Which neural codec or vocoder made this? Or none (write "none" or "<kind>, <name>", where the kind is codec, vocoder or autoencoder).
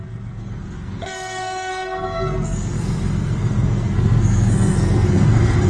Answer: codec, SNAC